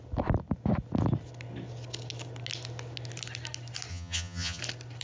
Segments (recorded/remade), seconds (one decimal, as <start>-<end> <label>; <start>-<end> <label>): 0.0-3.9 recorded; 3.9-4.6 remade; 4.6-5.0 recorded